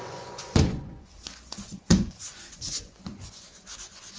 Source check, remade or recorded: remade